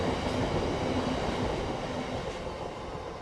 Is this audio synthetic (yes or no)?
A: no